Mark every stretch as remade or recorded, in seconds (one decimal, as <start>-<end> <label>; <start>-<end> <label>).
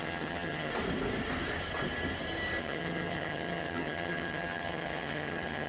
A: 0.0-0.7 remade; 0.7-2.6 recorded; 2.6-5.7 remade